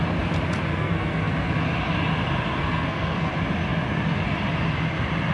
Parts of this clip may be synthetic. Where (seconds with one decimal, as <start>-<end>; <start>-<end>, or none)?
0.7-1.5; 2.6-3.3